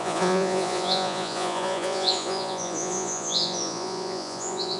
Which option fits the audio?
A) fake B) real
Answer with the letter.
A